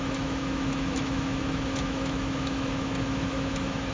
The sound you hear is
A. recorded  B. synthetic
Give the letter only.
B